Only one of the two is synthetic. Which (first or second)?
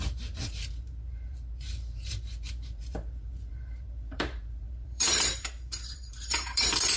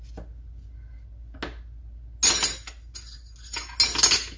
first